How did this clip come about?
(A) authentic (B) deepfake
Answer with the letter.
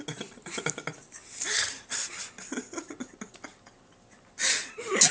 A